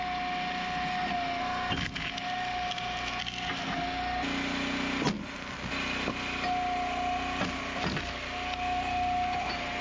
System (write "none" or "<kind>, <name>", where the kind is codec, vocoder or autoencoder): none